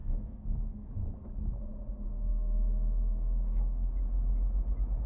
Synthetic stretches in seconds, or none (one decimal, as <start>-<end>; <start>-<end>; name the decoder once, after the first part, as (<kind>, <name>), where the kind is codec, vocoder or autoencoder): 0.0-0.9 (codec, SNAC); 2.3-3.9